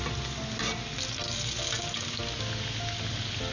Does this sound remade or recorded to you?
recorded